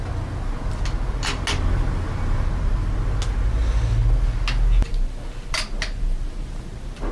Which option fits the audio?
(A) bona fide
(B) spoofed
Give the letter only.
A